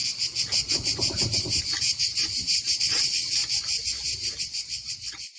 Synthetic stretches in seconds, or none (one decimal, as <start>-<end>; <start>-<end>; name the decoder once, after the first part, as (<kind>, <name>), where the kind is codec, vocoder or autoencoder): 2.8-3.4 (vocoder, WaveNeXt); 4.4-5.4

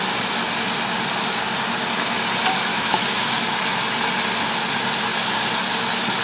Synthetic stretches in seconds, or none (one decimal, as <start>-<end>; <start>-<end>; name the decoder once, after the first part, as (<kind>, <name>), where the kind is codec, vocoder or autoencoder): 2.7-3.3 (autoencoder, DAC-VAE)

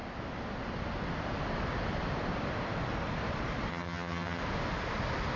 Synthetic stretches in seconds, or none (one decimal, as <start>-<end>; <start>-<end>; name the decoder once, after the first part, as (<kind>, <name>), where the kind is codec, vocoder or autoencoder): 3.7-4.4 (vocoder, HiFi-GAN)